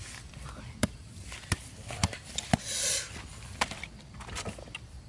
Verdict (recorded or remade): remade